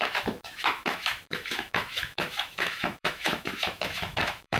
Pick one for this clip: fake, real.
fake